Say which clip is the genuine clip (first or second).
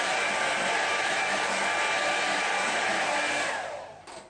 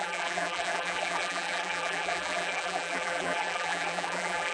first